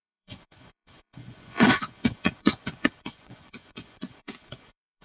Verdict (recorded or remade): remade